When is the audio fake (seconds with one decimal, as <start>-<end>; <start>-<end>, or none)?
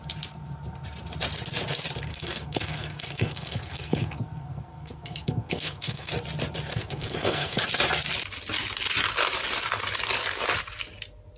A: 2.1-6.1; 6.7-7.6